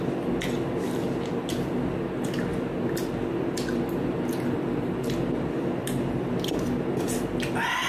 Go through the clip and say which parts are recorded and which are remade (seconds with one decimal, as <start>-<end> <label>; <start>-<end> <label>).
0.0-7.9 recorded